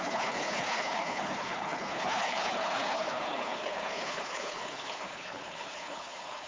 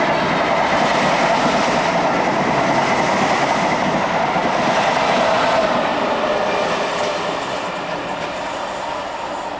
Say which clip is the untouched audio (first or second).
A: second